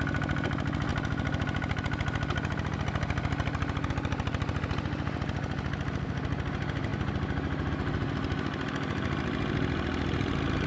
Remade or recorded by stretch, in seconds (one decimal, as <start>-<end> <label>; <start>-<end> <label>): 0.0-10.7 recorded